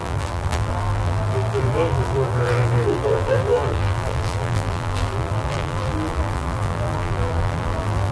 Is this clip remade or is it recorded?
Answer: remade